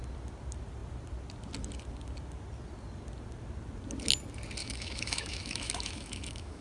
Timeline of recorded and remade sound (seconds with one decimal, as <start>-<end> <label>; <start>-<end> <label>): 0.0-4.6 recorded; 4.6-6.6 remade